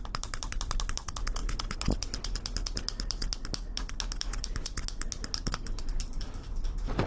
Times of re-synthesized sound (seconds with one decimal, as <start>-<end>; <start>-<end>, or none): 0.0-1.4; 5.5-7.1